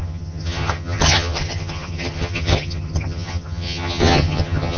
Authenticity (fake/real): fake